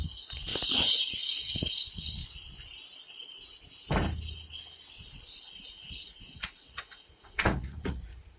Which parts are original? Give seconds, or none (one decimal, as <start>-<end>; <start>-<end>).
0.5-1.4; 2.2-5.7